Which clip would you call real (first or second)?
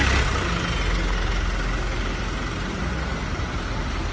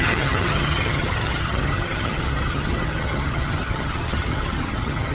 first